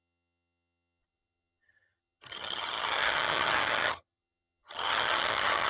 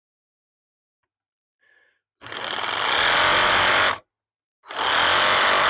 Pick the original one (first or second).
second